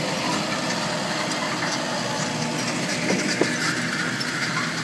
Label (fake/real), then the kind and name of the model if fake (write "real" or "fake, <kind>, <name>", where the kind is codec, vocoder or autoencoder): real